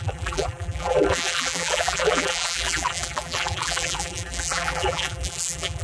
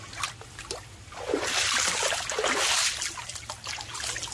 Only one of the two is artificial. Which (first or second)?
first